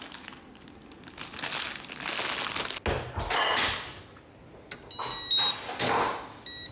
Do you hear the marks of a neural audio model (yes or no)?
no